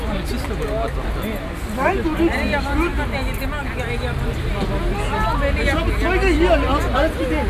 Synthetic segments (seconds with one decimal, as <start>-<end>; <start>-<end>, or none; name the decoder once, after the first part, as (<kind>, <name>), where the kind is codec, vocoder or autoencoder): none